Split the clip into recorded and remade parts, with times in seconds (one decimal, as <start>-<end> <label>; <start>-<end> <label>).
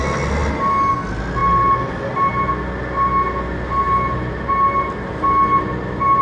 0.0-6.2 recorded